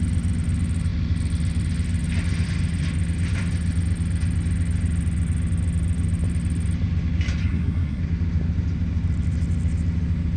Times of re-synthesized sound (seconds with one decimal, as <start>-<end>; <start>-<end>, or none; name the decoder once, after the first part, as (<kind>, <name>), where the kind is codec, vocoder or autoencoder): 7.4-8.0 (codec, SNAC)